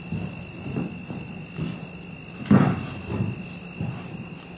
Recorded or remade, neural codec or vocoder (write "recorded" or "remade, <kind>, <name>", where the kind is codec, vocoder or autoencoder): recorded